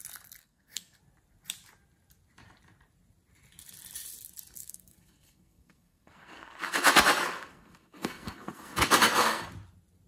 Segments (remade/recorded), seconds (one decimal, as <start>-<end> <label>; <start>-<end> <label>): 0.0-0.4 recorded; 0.4-1.0 remade; 1.0-4.6 recorded; 4.6-9.5 remade; 9.5-10.1 recorded